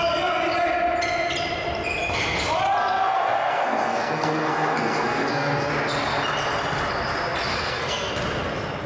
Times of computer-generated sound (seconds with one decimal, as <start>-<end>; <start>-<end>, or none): 2.8-5.7; 7.5-8.1